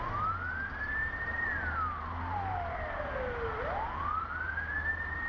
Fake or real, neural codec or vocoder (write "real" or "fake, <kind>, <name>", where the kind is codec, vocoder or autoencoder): real